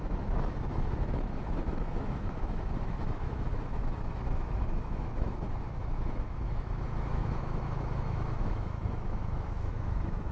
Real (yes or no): no